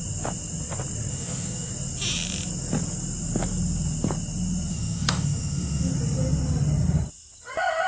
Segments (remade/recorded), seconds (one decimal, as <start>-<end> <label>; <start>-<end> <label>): 0.0-1.1 recorded; 1.1-1.7 remade; 1.7-4.7 recorded; 4.7-5.9 remade; 5.9-7.9 recorded